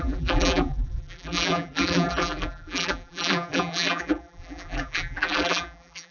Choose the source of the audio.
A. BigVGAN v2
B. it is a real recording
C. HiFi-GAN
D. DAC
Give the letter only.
A